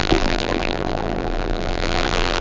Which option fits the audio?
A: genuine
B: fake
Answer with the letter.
B